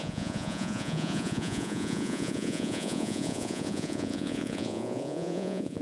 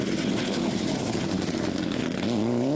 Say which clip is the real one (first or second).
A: second